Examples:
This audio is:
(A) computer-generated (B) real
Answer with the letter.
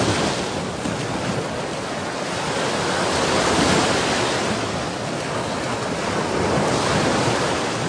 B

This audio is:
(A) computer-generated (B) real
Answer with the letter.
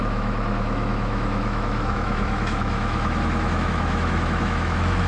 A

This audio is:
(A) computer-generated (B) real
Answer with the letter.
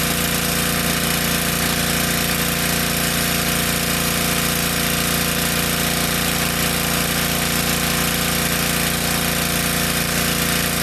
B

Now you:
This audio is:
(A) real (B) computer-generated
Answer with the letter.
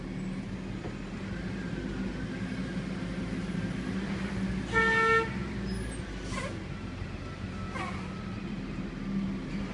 A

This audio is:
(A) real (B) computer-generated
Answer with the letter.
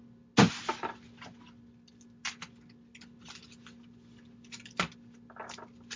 A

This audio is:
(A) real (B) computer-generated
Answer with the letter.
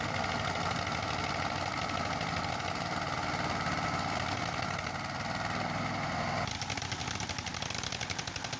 A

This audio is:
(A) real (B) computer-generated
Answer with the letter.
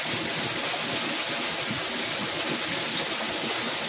A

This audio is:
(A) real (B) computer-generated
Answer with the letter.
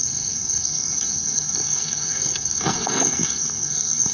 B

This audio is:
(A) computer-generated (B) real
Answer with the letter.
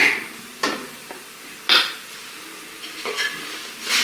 B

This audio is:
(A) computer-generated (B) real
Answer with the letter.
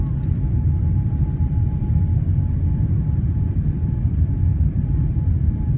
A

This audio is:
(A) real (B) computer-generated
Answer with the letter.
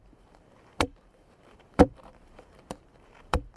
B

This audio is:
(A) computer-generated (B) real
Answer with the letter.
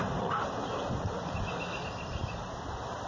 B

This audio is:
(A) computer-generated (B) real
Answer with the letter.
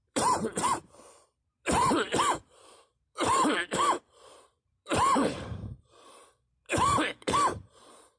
A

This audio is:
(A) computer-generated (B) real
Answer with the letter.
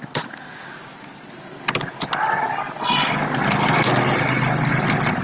B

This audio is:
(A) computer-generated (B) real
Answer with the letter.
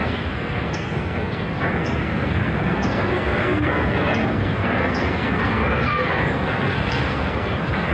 A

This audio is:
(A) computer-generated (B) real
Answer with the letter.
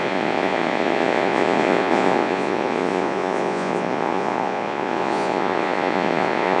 A